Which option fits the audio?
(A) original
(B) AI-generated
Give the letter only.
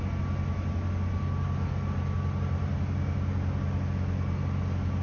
A